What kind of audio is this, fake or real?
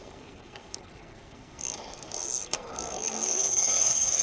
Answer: fake